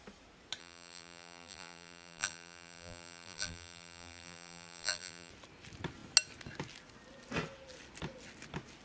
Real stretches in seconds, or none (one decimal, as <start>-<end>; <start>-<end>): 0.0-0.6; 5.3-8.8